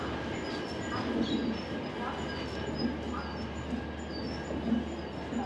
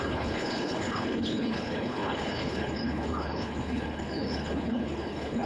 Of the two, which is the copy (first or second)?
second